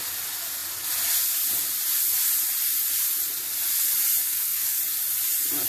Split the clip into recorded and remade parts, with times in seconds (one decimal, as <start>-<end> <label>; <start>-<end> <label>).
0.0-4.2 recorded; 4.2-4.8 remade; 4.8-5.7 recorded